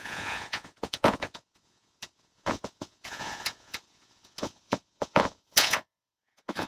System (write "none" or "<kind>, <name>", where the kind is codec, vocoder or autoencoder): vocoder, Vocos